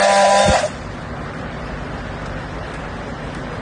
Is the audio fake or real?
real